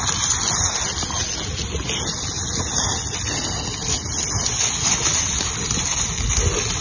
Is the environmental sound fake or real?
real